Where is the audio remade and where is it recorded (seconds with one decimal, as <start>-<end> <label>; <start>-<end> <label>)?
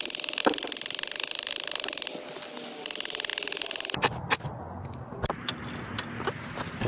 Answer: 0.0-6.9 recorded